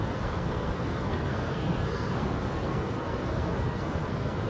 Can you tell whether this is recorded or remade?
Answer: remade